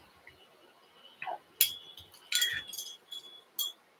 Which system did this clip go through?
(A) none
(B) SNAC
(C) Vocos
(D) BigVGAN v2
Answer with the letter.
A